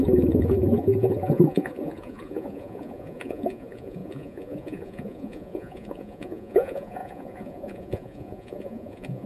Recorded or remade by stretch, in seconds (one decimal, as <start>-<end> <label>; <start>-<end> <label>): 0.0-9.3 remade